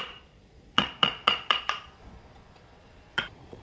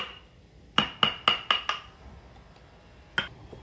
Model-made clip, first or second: first